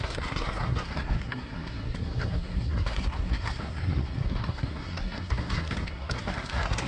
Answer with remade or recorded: remade